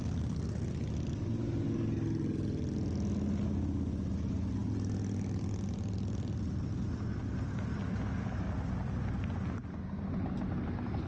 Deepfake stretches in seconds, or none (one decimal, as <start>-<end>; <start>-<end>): none